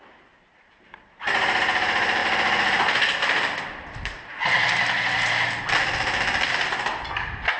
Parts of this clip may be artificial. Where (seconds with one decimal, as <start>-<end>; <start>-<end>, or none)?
none